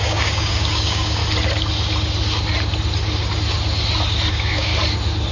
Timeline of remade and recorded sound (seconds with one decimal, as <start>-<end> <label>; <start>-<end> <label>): 0.0-1.2 remade; 1.2-4.3 recorded; 4.3-4.7 remade; 4.7-5.3 recorded